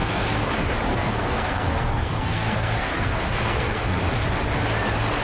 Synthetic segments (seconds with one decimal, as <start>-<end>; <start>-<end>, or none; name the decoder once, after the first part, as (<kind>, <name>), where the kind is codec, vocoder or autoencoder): 0.0-0.5 (codec, SNAC); 0.9-4.0

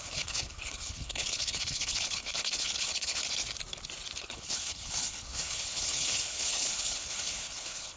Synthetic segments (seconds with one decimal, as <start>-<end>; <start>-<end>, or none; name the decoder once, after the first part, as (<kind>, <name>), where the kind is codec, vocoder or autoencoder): 0.0-3.2 (codec, HILCodec); 4.2-8.0

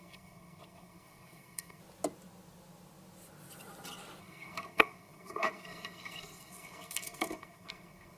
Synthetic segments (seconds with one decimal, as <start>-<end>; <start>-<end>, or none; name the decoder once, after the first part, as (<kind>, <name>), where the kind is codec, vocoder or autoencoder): 0.0-1.8 (codec, SNAC); 4.2-8.2

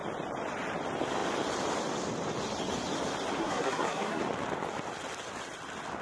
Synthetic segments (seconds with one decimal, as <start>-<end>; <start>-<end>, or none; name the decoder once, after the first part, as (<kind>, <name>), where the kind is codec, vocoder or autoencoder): 3.4-4.2 (codec, SNAC)

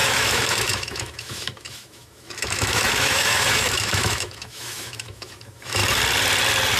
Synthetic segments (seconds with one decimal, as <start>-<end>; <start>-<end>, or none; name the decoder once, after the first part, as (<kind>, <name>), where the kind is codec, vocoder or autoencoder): 0.0-5.8 (autoencoder, DAC-VAE)

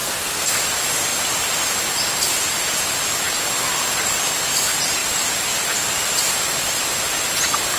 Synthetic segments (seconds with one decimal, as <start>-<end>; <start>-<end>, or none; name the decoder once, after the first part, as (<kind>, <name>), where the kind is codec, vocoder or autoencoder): 0.0-0.5 (codec, SNAC)

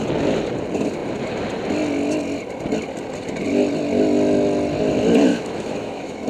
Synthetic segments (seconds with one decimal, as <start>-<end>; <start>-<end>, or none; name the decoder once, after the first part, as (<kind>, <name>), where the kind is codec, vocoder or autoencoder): 5.3-6.3 (autoencoder, DAC-VAE)